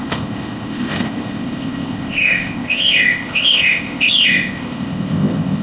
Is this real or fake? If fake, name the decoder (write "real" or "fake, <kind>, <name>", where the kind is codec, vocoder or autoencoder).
fake, codec, ZipCodec